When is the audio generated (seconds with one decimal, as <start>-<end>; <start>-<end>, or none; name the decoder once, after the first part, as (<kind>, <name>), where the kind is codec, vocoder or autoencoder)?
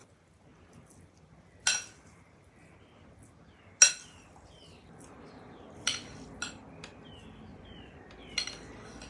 7.5-8.0 (vocoder, Vocos)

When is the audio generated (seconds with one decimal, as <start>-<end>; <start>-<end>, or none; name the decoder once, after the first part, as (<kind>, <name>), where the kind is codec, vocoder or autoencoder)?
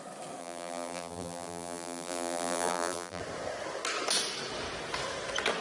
0.4-3.2 (vocoder, BigVGAN v2)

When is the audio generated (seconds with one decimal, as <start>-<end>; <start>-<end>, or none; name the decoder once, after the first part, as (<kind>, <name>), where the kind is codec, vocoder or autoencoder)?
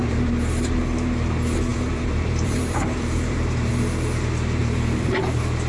0.0-0.8 (vocoder, BigVGAN v2); 1.7-3.7; 4.6-5.2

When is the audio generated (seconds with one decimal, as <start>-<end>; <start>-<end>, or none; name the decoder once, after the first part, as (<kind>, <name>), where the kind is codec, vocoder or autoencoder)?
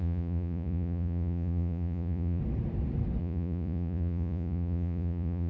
0.0-2.4 (vocoder, Vocos); 3.2-5.5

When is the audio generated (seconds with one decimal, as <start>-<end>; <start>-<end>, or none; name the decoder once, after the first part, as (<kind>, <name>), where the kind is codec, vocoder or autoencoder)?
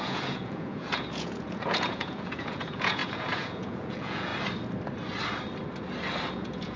0.0-4.3 (vocoder, Vocos); 6.3-6.8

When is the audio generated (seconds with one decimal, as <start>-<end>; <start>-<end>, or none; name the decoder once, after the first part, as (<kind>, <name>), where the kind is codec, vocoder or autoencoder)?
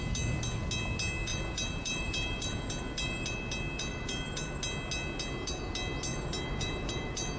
1.3-3.3 (vocoder, BigVGAN v2); 3.9-4.6; 6.1-7.4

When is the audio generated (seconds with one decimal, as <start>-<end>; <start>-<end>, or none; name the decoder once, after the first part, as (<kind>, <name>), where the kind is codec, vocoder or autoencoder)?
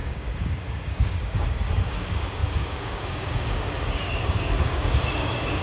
0.0-5.6 (codec, DAC)